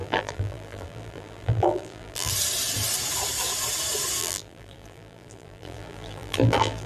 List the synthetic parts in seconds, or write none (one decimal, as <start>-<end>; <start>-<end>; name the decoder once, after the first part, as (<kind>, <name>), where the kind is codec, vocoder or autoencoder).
0.0-2.3 (vocoder, BigVGAN v2); 4.2-6.9